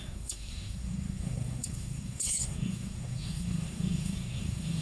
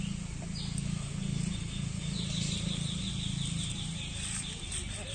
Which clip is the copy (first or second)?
first